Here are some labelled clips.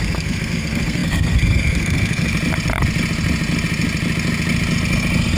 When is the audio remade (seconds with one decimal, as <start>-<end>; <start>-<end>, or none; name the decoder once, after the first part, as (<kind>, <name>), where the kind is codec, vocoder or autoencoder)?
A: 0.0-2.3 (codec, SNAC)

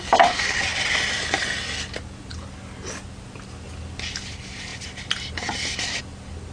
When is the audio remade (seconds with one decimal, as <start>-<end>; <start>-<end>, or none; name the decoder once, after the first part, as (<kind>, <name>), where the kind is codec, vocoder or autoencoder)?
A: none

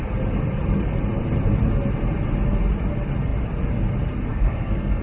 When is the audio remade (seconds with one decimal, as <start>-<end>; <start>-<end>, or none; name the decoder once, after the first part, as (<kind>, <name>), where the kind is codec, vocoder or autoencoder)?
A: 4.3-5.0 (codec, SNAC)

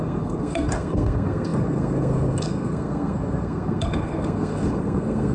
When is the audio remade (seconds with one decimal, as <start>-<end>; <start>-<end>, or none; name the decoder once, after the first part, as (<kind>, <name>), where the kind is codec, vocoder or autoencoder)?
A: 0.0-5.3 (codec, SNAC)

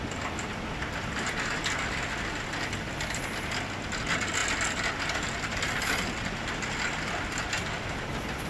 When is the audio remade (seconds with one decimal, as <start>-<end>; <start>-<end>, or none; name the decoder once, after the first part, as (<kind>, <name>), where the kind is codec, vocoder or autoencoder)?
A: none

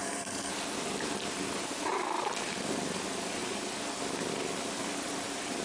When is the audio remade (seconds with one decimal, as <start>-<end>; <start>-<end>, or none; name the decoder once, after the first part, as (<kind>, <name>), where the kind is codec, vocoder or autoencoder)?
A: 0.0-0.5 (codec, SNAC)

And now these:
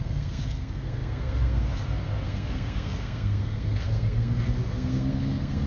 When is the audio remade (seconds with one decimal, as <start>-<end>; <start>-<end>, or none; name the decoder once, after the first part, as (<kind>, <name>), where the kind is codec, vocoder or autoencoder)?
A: 0.0-5.7 (codec, SNAC)

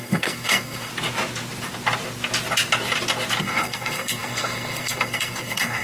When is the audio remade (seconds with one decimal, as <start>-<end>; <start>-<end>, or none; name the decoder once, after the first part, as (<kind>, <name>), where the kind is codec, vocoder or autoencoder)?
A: 0.0-0.9 (codec, SNAC); 3.4-5.8